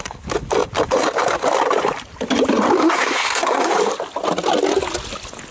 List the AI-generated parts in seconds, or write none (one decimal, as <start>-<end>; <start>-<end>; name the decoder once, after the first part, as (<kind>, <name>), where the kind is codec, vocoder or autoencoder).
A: 2.8-3.7 (codec, SNAC)